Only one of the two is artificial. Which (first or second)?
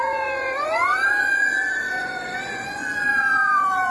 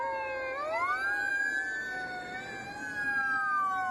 first